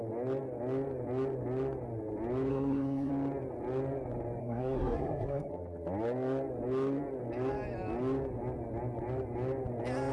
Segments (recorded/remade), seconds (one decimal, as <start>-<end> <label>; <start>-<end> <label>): 0.0-2.5 recorded; 2.5-3.1 remade; 3.1-4.4 recorded; 4.4-5.5 remade; 5.5-10.1 recorded

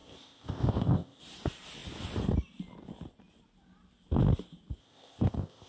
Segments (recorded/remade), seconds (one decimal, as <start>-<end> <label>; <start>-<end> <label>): 0.0-1.2 remade; 1.2-4.8 recorded; 4.8-5.7 remade

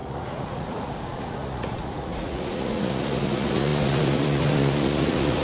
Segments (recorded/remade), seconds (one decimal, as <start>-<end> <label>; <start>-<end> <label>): 0.0-5.4 remade